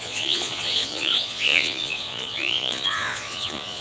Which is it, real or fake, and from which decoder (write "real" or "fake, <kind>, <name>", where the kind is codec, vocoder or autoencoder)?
fake, vocoder, Vocos